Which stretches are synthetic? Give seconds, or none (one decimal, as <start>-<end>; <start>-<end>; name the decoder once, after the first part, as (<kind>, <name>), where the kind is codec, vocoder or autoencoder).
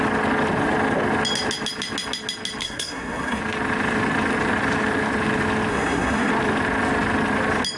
2.6-3.4 (codec, SNAC); 5.7-6.3